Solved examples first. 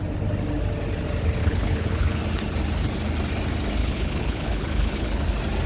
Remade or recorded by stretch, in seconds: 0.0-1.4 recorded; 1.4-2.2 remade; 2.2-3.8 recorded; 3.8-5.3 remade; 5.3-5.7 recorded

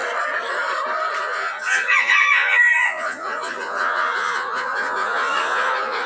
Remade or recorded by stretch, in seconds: 0.0-1.2 recorded; 1.2-6.1 remade